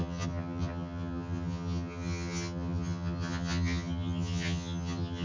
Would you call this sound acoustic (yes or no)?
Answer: no